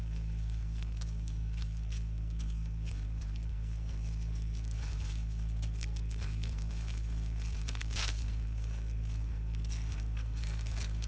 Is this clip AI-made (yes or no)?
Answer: yes